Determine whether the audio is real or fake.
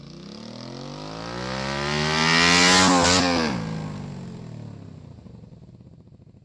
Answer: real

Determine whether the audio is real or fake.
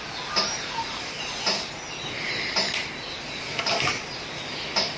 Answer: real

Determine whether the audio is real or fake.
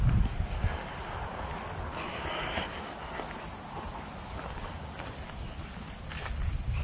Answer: real